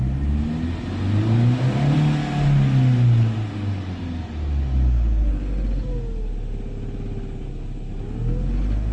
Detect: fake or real real